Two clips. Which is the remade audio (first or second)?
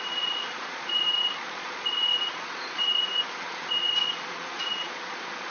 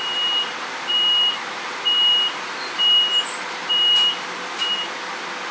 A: first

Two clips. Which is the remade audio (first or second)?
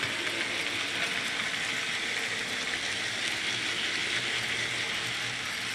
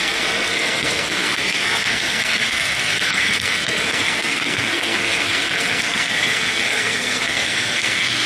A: second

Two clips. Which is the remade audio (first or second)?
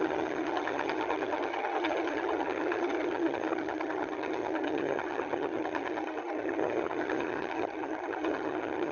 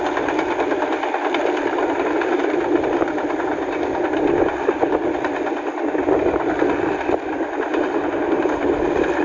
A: first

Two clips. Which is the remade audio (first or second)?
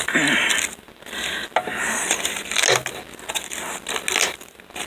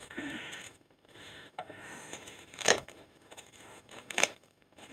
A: second